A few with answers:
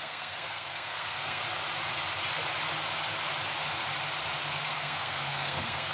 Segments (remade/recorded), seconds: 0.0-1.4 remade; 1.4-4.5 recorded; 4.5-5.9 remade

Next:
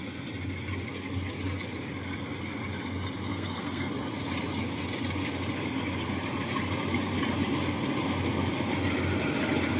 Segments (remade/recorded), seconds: 0.0-3.3 recorded; 3.3-3.9 remade; 3.9-9.8 recorded

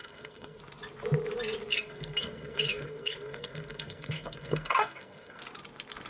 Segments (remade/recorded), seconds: 0.0-0.6 remade; 0.6-1.7 recorded; 1.7-5.4 remade; 5.4-6.1 recorded